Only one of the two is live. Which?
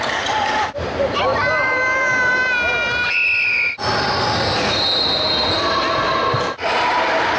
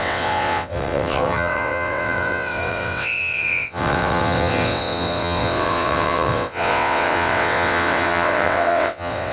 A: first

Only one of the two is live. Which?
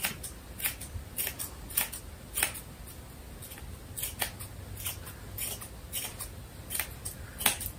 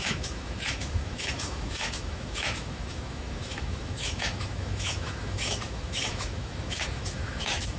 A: first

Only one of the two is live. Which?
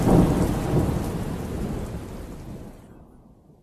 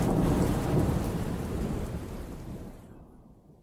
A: first